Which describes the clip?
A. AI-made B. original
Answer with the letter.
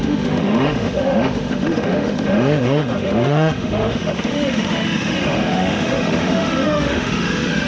A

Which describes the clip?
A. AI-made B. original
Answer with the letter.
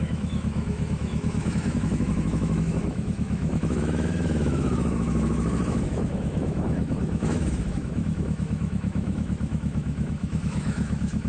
A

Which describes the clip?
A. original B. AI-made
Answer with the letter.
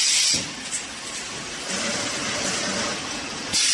A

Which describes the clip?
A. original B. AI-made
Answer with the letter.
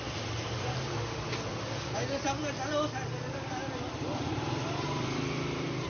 A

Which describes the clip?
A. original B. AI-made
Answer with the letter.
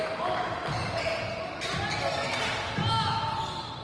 A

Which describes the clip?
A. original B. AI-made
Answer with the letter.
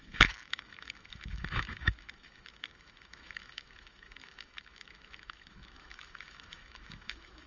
B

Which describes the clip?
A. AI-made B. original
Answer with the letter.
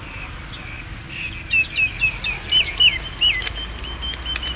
B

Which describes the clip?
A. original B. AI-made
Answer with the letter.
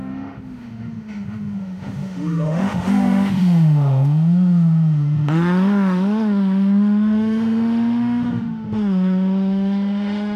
B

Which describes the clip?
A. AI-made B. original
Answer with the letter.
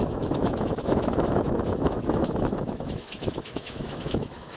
A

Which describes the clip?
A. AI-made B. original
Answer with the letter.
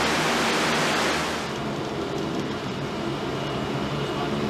B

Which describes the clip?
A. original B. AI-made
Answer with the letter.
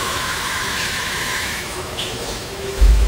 B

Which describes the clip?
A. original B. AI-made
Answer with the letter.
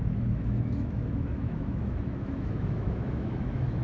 B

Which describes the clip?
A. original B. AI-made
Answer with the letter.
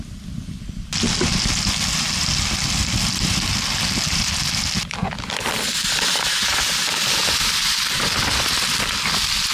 A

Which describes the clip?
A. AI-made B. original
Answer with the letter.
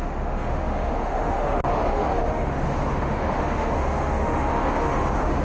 A